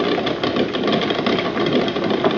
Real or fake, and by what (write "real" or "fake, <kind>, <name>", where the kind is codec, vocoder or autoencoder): real